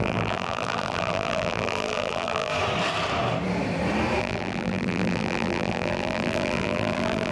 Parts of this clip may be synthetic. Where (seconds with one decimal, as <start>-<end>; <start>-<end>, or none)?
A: 0.0-2.5; 4.2-7.3